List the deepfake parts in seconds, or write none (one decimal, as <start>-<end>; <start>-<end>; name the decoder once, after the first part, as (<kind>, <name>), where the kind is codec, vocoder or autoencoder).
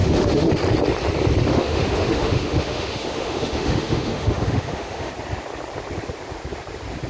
0.0-0.5 (autoencoder, DAC-VAE); 1.5-5.1